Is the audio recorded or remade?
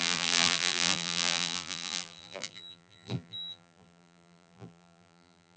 remade